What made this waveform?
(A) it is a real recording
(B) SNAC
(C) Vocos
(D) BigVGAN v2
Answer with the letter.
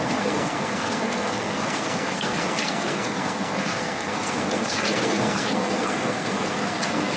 B